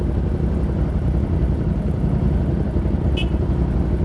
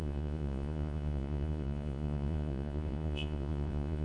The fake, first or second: second